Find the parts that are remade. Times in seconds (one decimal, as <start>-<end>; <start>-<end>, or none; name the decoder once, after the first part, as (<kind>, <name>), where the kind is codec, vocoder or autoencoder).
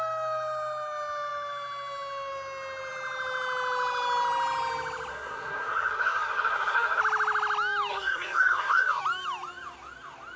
5.1-7.0 (codec, SNAC); 7.9-9.0